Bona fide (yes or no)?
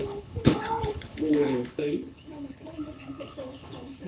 no